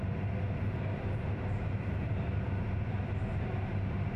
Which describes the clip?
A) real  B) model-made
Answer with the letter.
A